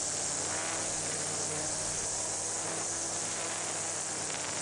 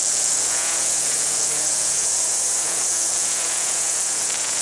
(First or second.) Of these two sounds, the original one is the first